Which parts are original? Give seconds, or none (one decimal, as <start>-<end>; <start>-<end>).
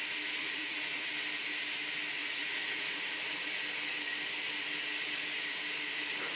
0.0-0.4; 1.1-2.2; 3.5-6.4